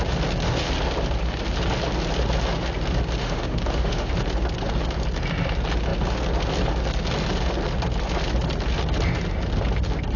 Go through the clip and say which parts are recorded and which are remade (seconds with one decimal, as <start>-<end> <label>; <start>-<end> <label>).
0.0-3.2 recorded; 3.2-4.1 remade; 4.1-10.2 recorded